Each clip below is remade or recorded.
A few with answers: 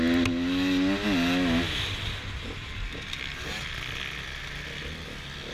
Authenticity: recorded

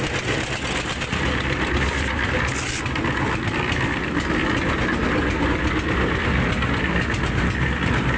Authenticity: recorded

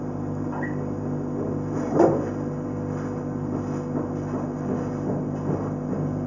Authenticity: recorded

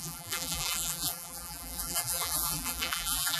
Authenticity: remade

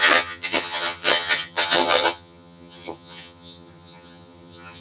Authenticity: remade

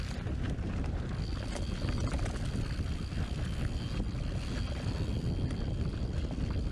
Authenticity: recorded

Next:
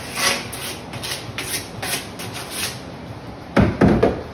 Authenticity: recorded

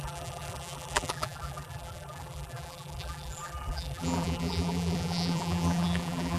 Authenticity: remade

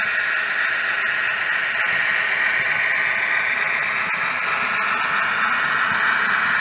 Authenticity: recorded